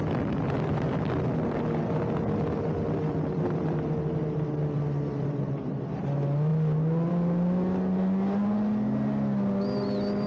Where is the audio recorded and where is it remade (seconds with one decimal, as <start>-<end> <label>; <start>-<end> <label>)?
0.0-10.3 recorded